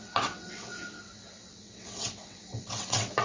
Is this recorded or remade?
remade